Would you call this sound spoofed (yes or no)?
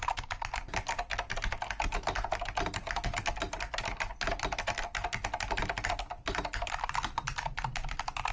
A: no